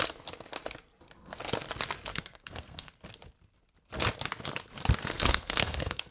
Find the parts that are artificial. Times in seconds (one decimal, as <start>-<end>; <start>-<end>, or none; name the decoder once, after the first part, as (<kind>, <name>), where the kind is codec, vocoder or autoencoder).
2.1-2.9 (codec, SNAC); 5.0-6.1